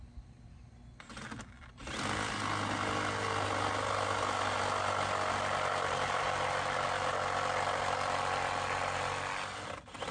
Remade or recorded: recorded